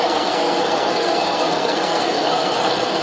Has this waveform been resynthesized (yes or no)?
yes